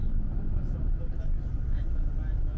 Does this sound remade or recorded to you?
recorded